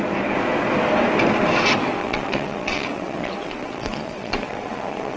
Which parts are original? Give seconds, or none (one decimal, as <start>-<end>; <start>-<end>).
0.0-2.0